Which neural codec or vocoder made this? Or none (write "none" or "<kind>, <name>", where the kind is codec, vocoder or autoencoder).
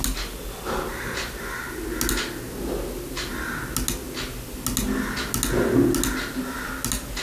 none